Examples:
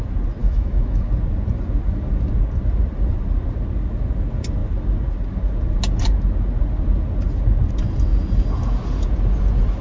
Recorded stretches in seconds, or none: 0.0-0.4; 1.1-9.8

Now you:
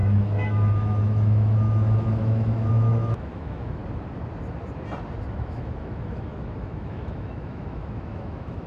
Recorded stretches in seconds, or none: 3.8-5.3

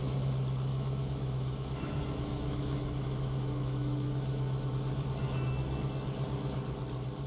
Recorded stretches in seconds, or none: 0.0-0.7; 4.7-7.3

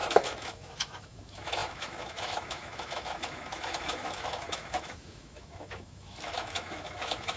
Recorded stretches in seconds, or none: none

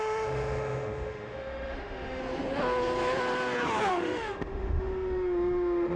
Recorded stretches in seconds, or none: 2.2-3.9